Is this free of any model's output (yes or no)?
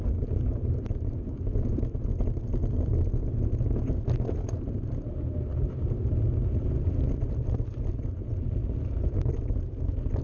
yes